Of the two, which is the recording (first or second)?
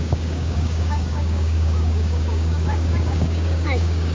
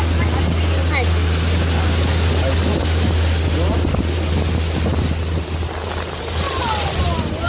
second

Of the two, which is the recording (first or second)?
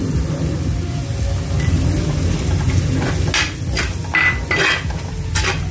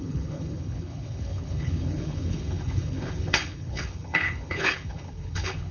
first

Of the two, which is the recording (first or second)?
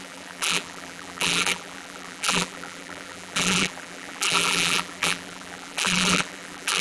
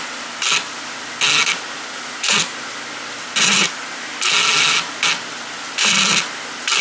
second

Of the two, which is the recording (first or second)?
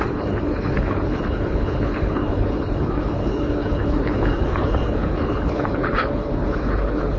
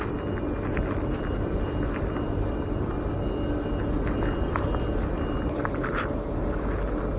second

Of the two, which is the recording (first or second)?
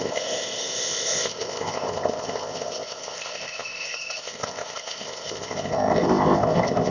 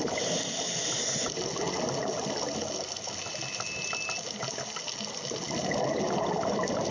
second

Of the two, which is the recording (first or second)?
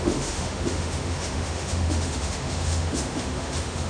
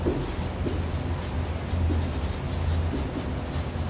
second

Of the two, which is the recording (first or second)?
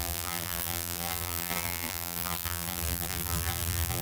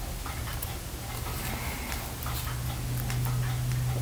second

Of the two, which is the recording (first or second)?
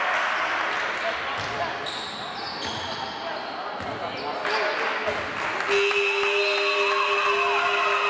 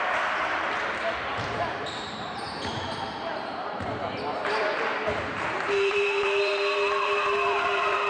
first